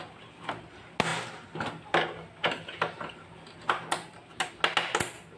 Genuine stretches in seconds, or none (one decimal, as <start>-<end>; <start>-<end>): 0.0-5.4